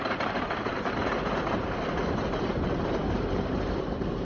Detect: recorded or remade remade